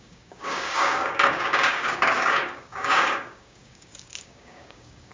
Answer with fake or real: fake